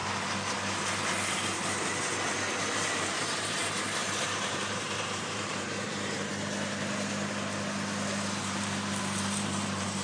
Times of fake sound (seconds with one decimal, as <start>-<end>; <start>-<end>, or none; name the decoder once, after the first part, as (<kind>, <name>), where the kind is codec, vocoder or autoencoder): 2.7-6.3 (vocoder, BigVGAN v2); 8.4-10.0